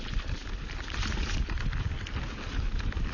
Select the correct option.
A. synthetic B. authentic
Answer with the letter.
B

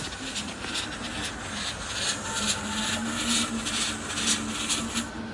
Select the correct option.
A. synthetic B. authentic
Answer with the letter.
B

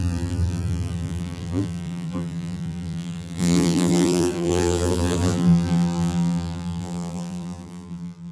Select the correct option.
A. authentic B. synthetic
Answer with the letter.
B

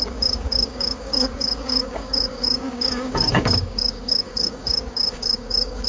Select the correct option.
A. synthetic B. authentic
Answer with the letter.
A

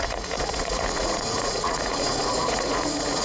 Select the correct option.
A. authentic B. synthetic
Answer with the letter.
B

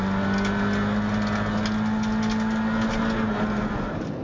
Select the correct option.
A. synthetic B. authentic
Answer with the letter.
B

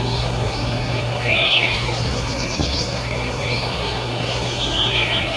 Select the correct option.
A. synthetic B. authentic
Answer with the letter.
A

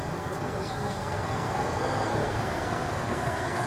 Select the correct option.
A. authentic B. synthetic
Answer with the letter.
B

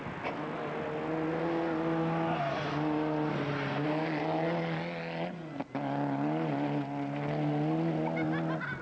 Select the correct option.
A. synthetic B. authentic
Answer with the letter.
B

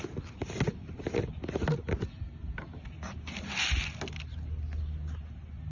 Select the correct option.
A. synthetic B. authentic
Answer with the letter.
B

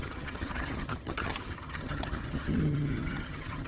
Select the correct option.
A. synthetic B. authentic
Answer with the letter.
A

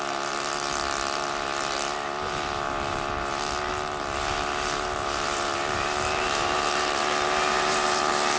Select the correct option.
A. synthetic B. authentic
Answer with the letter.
A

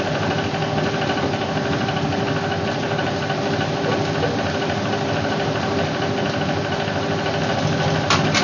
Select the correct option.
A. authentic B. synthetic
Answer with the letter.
A